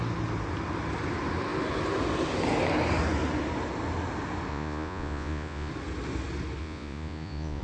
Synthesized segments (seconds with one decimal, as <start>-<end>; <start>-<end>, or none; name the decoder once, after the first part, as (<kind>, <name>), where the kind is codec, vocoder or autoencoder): 4.5-5.7 (vocoder, Vocos); 6.6-7.6